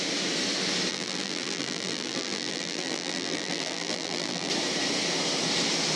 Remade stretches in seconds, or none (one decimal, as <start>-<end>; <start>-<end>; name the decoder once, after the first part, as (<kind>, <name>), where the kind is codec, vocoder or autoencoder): 0.9-4.5 (vocoder, BigVGAN v2)